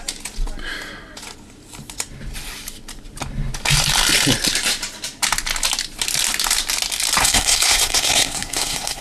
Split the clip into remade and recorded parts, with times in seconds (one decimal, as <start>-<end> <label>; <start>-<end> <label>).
0.0-7.2 recorded; 7.2-9.0 remade